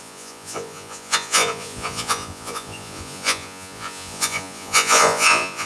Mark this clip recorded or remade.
remade